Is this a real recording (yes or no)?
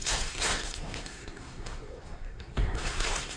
no